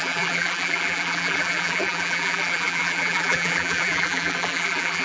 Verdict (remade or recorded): remade